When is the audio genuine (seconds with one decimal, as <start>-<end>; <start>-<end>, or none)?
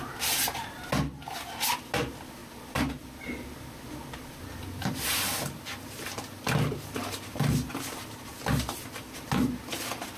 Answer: 0.0-10.2